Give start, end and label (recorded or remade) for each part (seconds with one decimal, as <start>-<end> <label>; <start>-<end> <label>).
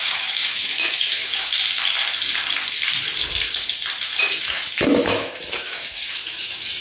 0.0-1.6 remade; 1.6-4.2 recorded; 4.2-6.8 remade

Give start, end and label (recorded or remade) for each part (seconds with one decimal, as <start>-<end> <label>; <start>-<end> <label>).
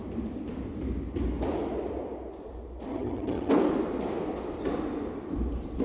0.0-2.9 recorded; 2.9-3.5 remade; 3.5-5.8 recorded